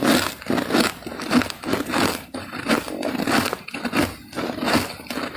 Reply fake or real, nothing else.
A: real